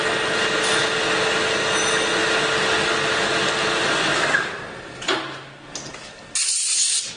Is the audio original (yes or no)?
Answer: yes